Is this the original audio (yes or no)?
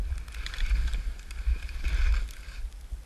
yes